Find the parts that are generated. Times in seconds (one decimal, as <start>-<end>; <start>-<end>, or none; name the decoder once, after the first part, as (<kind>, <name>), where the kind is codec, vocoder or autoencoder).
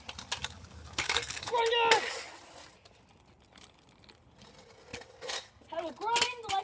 0.4-1.6 (codec, DAC)